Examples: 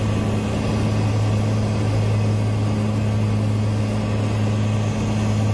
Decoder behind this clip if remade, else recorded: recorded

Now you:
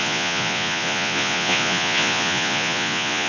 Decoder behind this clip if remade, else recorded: remade, vocoder, Vocos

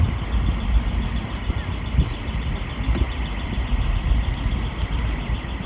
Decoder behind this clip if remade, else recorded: recorded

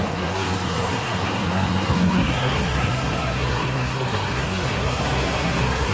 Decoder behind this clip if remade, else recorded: remade, codec, SNAC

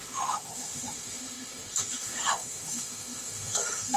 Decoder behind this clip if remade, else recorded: remade, autoencoder, DAC-VAE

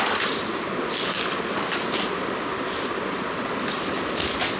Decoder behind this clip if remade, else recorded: recorded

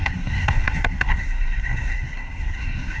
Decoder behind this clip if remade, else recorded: remade, codec, SNAC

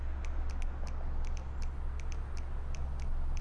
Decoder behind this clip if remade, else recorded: recorded